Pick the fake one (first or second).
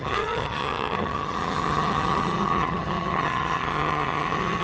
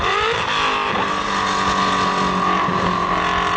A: first